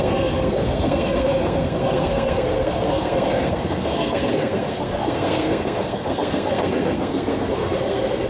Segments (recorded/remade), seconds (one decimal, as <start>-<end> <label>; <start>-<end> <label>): 0.0-8.3 remade

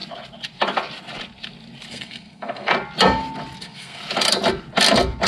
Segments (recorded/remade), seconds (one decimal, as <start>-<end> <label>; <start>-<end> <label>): 0.0-1.9 recorded; 1.9-2.7 remade; 2.7-3.6 recorded; 3.6-4.0 remade; 4.0-5.3 recorded

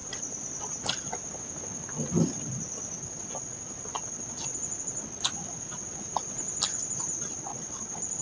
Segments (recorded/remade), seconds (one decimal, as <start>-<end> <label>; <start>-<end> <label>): 0.0-8.2 recorded

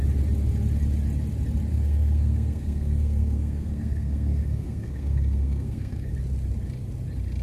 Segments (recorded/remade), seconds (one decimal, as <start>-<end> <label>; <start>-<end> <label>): 0.0-1.7 recorded; 1.7-6.1 remade; 6.1-7.4 recorded